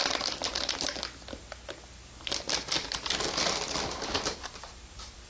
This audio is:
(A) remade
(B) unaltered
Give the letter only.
B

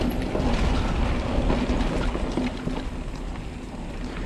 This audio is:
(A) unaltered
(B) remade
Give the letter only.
A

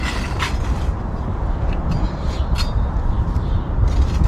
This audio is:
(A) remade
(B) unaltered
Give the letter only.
A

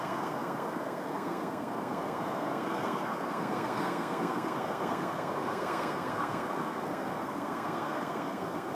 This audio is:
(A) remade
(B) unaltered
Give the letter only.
A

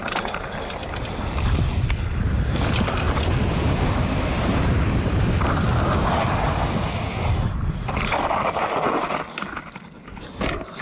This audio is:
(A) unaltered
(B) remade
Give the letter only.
A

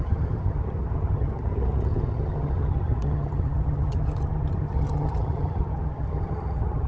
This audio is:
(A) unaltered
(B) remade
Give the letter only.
B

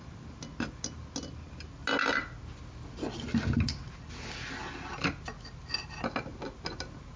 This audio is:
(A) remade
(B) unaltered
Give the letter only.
B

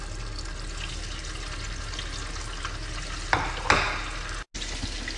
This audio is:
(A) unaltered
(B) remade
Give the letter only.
A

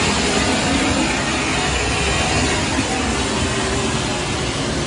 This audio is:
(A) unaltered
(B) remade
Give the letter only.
A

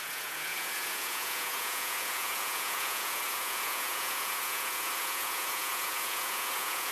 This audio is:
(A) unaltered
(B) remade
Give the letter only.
B